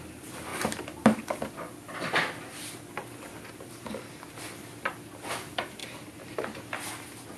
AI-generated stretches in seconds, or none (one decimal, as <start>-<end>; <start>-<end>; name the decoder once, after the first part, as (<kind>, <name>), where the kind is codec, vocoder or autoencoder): 0.5-1.2 (vocoder, BigVGAN v2); 5.8-6.9